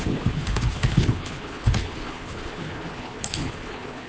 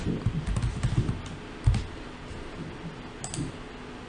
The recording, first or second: second